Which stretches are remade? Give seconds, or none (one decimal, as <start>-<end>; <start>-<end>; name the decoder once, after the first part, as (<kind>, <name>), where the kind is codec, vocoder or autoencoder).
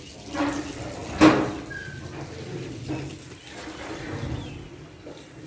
none